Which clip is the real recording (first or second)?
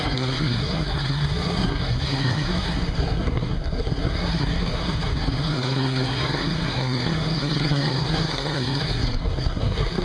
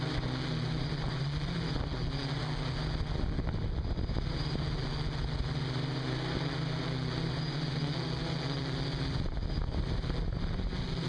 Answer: second